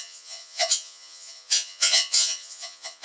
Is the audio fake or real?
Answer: fake